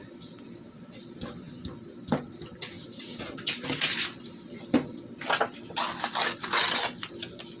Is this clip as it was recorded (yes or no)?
yes